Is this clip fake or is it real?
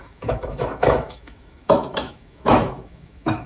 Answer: fake